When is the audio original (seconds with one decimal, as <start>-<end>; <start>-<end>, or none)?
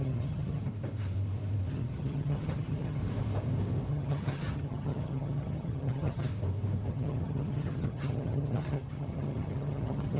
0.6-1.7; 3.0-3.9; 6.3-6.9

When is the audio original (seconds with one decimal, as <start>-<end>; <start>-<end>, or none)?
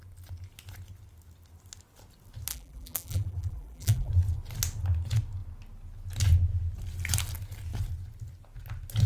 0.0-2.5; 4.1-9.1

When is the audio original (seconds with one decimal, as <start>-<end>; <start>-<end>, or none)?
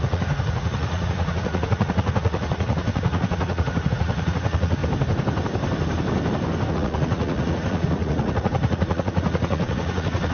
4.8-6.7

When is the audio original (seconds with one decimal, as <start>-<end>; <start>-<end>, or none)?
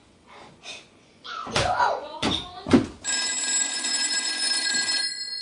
2.8-3.6